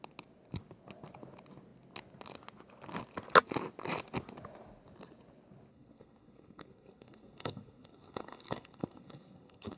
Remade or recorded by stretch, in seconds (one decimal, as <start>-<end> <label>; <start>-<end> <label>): 0.0-5.7 recorded; 5.7-9.8 remade